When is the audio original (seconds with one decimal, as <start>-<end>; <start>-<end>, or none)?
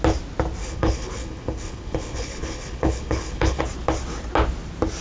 0.0-0.6; 3.6-5.0